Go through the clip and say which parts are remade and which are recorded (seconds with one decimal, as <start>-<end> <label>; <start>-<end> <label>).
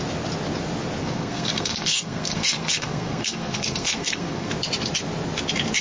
0.0-1.0 recorded; 1.0-4.5 remade; 4.5-5.8 recorded